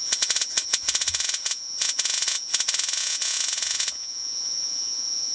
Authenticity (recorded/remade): remade